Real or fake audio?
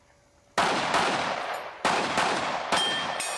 real